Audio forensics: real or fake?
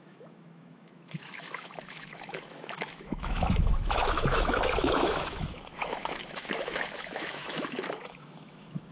fake